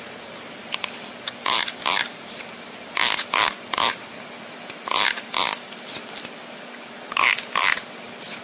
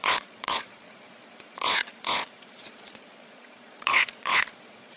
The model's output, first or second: second